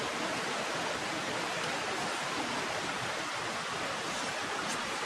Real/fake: real